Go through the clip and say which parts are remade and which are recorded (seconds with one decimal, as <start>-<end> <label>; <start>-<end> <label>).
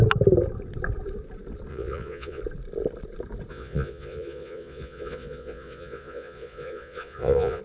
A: 0.0-1.7 recorded; 1.7-2.4 remade; 2.4-3.5 recorded; 3.5-7.6 remade